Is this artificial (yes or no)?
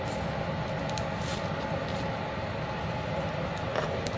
no